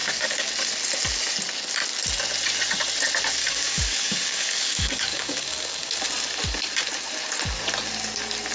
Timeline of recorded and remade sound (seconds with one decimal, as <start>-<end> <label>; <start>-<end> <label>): 0.0-0.5 remade; 0.5-3.4 recorded; 3.4-6.0 remade; 6.0-8.5 recorded